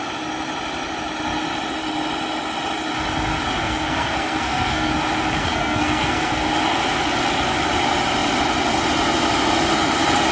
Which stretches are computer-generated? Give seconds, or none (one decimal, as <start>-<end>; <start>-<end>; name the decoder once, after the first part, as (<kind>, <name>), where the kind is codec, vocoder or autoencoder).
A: 3.6-4.9 (codec, SNAC); 5.4-6.5